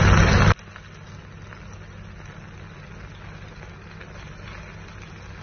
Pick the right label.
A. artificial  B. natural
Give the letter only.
B